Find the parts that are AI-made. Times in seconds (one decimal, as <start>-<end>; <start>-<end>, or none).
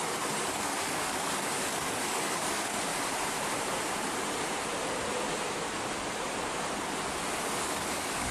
0.0-2.9; 7.6-8.3